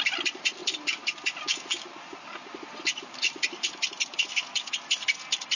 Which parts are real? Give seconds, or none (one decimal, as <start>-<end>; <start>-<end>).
0.0-5.5